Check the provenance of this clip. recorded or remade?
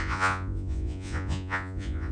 remade